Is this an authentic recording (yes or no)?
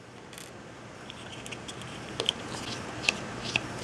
yes